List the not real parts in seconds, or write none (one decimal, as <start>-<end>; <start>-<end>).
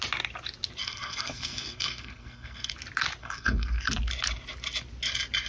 0.8-2.7; 3.2-3.9